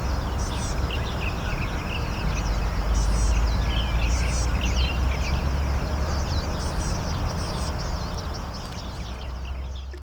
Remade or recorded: recorded